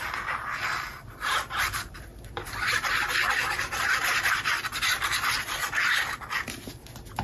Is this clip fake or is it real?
real